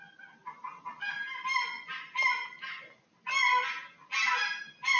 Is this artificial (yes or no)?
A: no